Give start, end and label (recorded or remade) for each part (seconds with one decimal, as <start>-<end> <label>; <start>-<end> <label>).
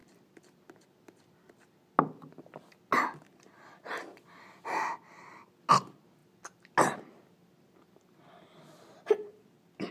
0.0-9.9 recorded